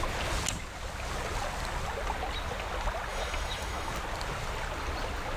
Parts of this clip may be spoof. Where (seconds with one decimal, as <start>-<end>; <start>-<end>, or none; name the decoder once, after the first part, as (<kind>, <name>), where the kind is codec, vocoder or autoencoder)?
3.1-3.9 (autoencoder, DAC-VAE)